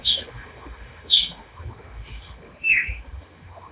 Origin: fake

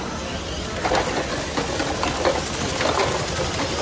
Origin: real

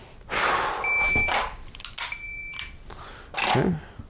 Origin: real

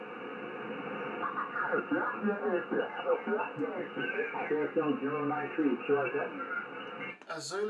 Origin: real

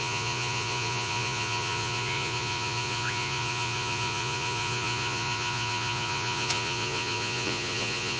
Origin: fake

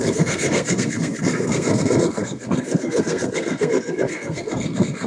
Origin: fake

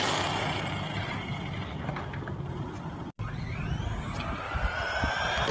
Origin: real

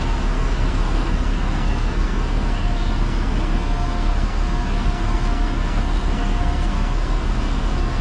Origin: fake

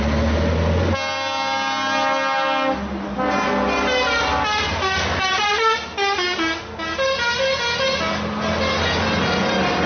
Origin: real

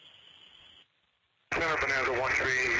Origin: real